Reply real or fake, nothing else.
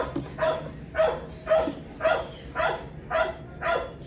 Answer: real